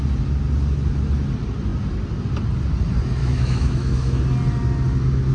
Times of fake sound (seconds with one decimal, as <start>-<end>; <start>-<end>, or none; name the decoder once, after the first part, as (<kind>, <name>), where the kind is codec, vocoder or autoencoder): 3.2-4.2 (autoencoder, DAC-VAE)